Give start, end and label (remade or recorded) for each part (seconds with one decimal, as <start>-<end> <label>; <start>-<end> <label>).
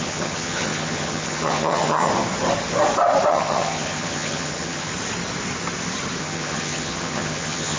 0.0-2.1 remade; 2.1-3.3 recorded; 3.3-4.9 remade; 4.9-6.2 recorded; 6.2-7.8 remade